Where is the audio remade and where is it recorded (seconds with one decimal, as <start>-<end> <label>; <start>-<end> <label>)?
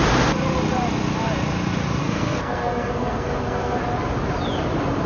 0.0-2.0 recorded; 2.0-3.8 remade; 3.8-5.1 recorded